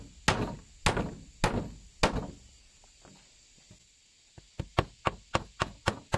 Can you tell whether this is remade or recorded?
recorded